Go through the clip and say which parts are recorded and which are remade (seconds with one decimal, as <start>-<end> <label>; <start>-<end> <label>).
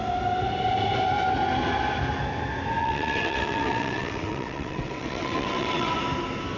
0.0-2.8 recorded; 2.8-5.9 remade; 5.9-6.6 recorded